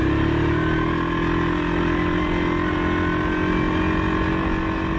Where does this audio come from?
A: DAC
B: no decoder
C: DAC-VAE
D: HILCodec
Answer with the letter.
B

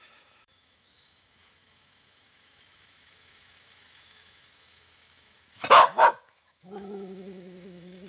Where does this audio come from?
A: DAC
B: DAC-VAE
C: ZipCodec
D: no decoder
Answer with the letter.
B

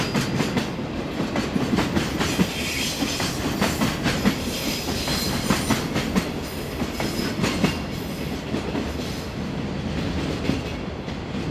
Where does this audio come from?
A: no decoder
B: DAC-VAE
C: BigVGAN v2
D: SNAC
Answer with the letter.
A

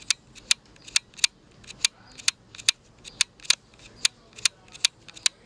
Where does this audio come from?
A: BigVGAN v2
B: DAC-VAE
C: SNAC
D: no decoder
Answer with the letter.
D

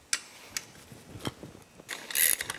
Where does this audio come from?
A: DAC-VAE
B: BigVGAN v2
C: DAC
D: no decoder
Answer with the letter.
D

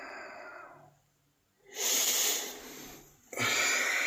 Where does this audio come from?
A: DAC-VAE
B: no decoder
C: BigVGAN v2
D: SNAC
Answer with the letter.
B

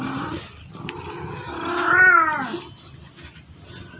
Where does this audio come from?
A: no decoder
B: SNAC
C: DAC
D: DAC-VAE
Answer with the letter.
A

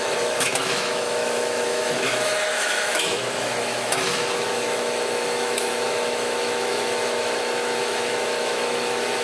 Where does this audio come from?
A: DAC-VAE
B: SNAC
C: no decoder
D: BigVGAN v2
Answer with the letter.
A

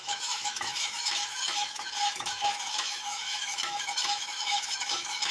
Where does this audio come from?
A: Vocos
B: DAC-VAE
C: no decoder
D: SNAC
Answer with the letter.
B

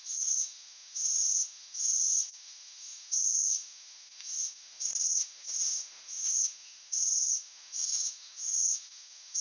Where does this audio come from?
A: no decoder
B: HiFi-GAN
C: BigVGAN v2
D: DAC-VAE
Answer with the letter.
D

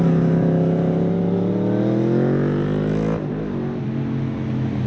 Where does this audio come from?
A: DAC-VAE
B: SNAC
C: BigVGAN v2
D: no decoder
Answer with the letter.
D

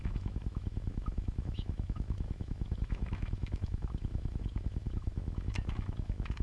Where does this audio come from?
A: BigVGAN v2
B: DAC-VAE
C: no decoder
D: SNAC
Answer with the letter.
B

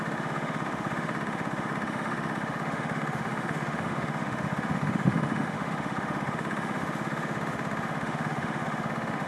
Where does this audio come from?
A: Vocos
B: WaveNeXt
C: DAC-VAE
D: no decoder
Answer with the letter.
C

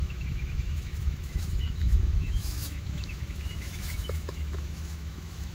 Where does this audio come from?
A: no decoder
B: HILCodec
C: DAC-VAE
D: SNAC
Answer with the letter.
C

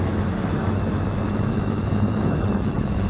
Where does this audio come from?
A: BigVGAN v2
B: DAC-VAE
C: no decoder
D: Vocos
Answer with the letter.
B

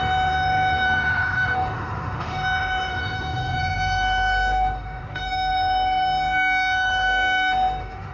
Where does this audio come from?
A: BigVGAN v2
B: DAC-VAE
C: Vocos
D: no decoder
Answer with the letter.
B